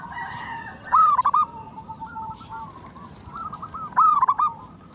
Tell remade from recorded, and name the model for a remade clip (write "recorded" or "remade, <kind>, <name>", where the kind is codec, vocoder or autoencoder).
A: remade, vocoder, BigVGAN v2